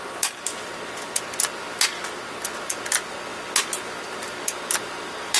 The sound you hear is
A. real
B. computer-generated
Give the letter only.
A